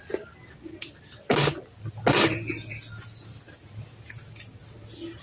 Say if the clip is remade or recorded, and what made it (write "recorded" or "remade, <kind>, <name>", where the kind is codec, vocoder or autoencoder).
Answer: recorded